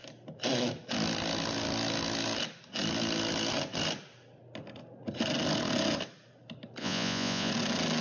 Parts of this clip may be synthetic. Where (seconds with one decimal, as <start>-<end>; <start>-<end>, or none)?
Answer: 6.8-7.5